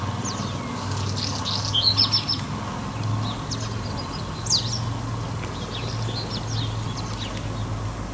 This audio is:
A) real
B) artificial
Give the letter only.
A